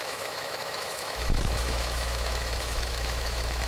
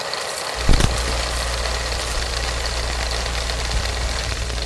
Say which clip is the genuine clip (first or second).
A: second